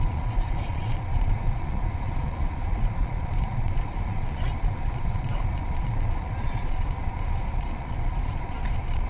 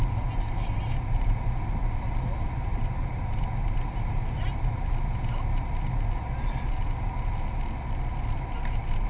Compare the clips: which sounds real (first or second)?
second